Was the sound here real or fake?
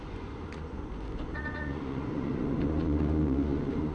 fake